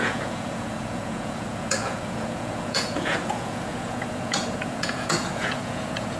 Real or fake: fake